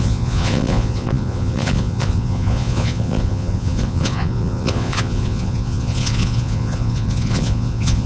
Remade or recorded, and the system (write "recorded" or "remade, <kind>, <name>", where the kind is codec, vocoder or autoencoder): remade, vocoder, Vocos